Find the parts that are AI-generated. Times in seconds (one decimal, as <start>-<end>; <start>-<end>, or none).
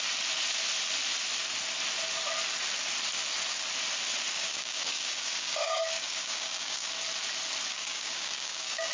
4.3-6.9; 7.7-8.9